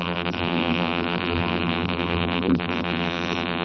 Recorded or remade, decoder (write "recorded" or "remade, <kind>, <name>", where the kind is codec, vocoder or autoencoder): remade, vocoder, BigVGAN v2